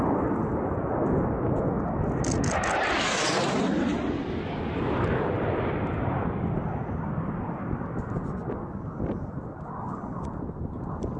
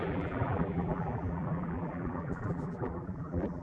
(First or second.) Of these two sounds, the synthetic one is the second